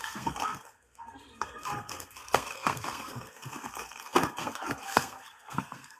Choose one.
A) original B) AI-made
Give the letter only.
B